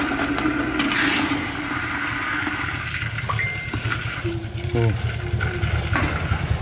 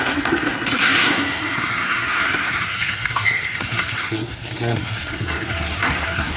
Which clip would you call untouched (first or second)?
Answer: first